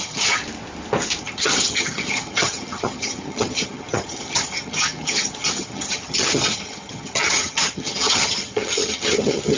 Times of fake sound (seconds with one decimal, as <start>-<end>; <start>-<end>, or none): 0.0-0.4; 1.2-9.6